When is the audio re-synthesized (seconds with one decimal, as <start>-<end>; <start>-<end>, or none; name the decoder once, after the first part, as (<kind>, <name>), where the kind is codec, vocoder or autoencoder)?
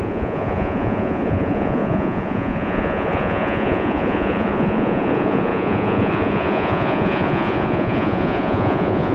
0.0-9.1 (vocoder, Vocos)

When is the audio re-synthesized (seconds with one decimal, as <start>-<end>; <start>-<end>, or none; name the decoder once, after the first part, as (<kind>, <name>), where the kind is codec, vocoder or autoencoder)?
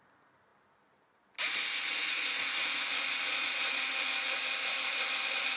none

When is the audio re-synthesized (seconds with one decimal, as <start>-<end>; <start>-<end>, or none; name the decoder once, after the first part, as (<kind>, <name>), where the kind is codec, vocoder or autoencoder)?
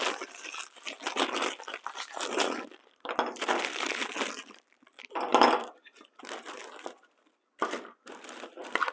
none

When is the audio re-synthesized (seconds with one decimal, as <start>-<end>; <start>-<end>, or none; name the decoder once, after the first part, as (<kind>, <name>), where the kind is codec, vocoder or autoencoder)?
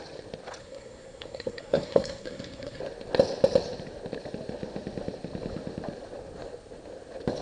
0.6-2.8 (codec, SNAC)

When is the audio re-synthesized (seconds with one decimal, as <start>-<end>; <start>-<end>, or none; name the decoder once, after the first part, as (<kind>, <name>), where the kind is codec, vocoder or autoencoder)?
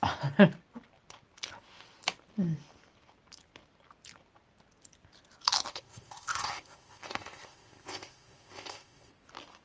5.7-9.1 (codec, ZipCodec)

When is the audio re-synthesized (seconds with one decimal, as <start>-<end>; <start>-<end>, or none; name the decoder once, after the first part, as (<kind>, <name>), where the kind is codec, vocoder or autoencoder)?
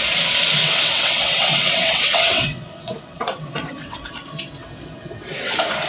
0.6-4.1 (vocoder, WaveNeXt); 4.6-5.5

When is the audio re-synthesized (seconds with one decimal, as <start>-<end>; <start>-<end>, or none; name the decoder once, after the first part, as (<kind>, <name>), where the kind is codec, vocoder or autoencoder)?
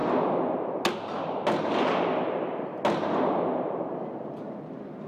none